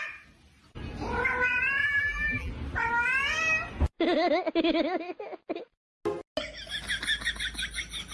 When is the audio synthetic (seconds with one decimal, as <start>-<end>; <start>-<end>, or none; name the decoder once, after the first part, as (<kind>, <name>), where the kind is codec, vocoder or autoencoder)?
1.8-2.5 (vocoder, BigVGAN v2)